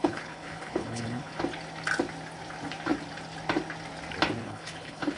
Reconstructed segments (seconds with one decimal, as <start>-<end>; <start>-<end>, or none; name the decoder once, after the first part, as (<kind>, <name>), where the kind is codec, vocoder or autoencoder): 0.0-1.4 (codec, HILCodec); 4.4-5.2

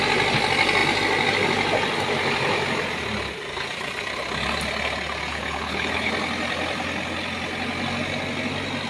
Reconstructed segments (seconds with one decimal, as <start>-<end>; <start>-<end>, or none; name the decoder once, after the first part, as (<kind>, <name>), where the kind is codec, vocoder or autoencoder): 5.3-6.1 (codec, HILCodec)

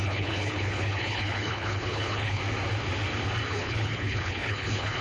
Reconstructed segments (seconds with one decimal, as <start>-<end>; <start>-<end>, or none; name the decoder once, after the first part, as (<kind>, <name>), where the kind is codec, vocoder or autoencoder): 0.0-2.4 (codec, HILCodec); 3.5-5.0

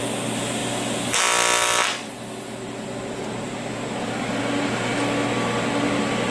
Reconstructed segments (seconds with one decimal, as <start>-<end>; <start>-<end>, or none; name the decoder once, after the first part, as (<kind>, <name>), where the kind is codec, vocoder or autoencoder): none

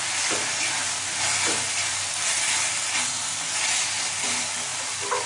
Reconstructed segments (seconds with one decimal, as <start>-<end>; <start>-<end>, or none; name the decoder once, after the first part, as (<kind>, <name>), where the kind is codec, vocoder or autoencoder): none

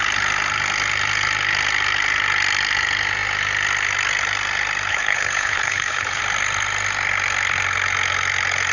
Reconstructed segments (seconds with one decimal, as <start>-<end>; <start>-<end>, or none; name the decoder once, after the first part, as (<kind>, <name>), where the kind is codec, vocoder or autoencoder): 4.9-6.2 (codec, HILCodec)

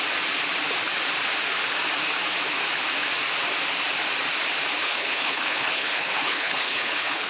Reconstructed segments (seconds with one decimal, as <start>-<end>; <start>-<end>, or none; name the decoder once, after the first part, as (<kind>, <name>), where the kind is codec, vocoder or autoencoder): 4.8-7.3 (codec, HILCodec)